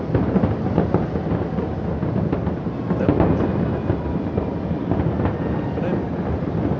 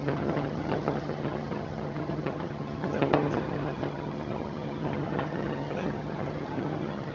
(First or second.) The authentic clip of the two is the first